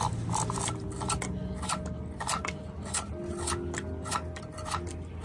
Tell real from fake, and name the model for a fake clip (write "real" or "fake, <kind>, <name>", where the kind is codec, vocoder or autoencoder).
real